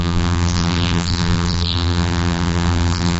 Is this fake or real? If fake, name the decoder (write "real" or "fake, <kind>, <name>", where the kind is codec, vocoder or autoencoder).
fake, vocoder, BigVGAN v2